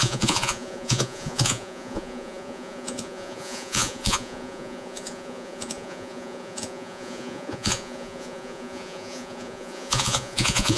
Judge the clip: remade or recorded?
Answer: remade